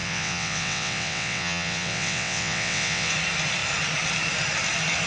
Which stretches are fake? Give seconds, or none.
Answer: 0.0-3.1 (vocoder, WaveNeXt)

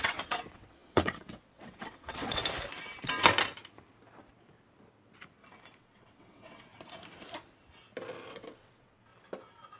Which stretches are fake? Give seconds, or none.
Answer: 0.0-2.4 (vocoder, WaveNeXt); 5.8-6.7; 8.3-9.1

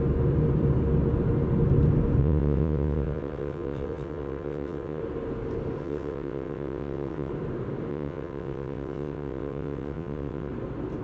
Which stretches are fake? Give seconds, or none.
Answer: 2.2-5.0 (vocoder, WaveNeXt); 5.8-7.3; 7.9-10.5

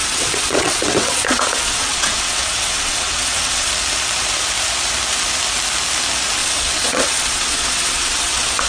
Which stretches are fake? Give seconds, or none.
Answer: 0.0-3.7 (vocoder, WaveNeXt); 6.4-8.7

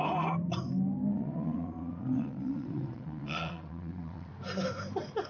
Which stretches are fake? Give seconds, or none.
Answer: 1.1-4.3 (vocoder, WaveNeXt)

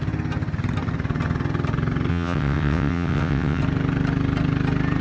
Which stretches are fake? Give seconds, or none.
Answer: 2.1-3.6 (vocoder, WaveNeXt)